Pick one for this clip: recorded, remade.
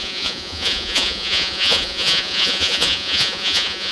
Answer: remade